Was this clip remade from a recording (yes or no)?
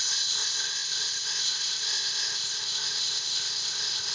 yes